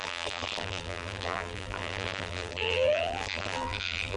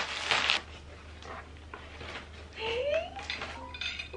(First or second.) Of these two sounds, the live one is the second